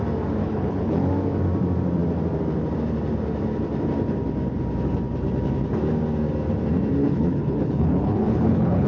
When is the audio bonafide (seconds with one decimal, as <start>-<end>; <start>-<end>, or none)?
0.0-0.4; 1.1-7.0